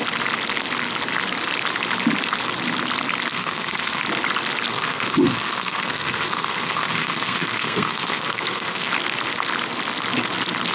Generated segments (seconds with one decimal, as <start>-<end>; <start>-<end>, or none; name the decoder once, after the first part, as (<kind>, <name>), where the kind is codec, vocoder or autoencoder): 3.3-4.0 (codec, SNAC); 4.7-8.9